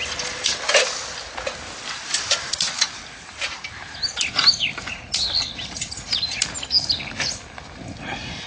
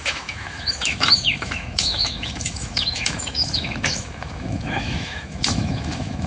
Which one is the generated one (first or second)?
second